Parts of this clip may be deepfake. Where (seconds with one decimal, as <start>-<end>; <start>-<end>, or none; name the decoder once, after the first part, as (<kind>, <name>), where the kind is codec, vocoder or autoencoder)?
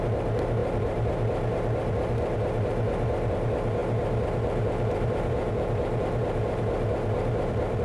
0.0-7.8 (vocoder, BigVGAN v2)